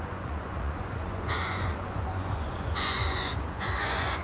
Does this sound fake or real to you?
fake